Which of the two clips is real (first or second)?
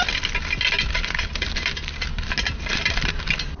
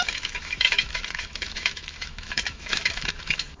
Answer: first